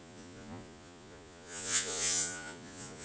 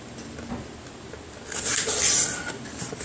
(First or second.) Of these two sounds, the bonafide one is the second